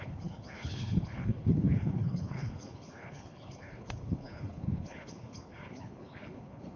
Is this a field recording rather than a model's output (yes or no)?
no